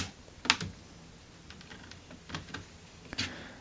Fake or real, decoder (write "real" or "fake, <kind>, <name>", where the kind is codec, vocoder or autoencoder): real